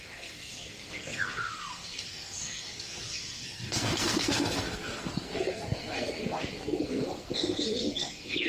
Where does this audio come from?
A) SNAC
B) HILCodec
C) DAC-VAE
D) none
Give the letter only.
A